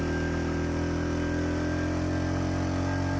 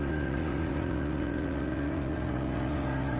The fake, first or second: second